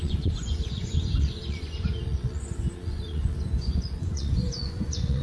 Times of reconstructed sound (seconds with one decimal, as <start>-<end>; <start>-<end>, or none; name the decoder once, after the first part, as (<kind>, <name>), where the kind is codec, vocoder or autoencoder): 0.0-5.2 (vocoder, Vocos)